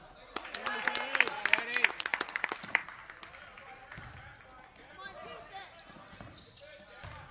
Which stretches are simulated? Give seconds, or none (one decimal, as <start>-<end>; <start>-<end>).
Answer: 0.0-0.6; 1.9-2.8